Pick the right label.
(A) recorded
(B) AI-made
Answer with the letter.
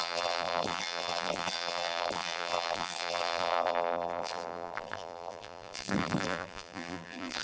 B